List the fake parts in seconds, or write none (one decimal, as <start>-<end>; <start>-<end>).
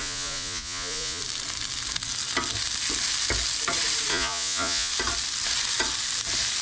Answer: 0.0-1.2; 4.1-4.9